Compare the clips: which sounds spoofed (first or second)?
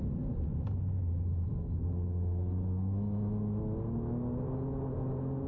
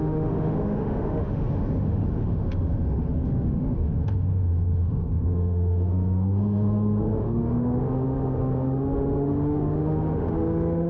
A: second